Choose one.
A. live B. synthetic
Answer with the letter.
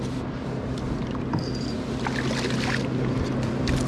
A